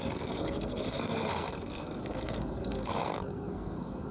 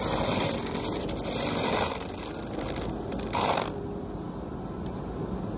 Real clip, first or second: second